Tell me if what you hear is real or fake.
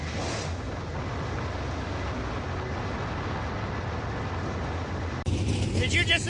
real